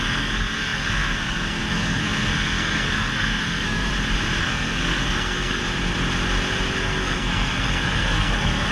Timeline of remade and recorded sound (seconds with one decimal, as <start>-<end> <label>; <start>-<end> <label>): 0.0-3.9 remade; 3.9-4.4 recorded; 4.4-5.6 remade; 5.6-6.8 recorded; 6.8-8.7 remade